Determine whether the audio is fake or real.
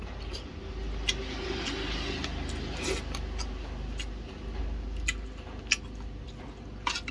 real